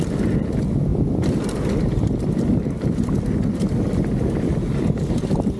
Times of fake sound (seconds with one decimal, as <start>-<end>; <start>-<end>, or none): none